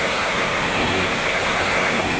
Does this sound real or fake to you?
fake